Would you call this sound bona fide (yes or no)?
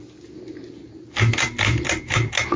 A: yes